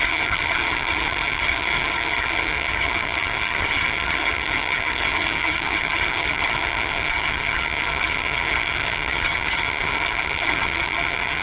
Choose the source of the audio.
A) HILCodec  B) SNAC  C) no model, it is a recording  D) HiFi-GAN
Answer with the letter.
D